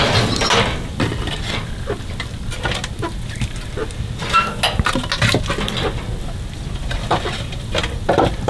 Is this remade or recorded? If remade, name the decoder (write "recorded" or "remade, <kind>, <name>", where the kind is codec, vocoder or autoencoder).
recorded